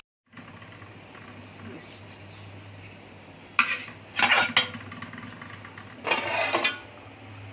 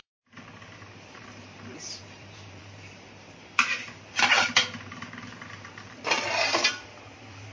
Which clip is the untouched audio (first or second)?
first